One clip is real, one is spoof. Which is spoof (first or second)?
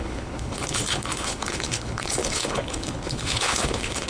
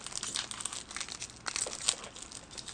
first